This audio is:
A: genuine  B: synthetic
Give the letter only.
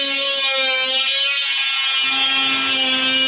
A